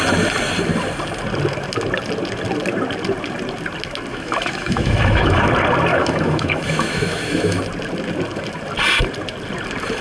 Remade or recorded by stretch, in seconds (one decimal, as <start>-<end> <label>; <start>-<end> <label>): 0.0-4.1 recorded; 4.1-5.5 remade; 5.5-5.9 recorded; 5.9-7.6 remade; 7.6-10.0 recorded